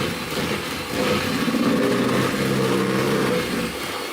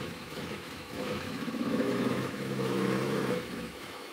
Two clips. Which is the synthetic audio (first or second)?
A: second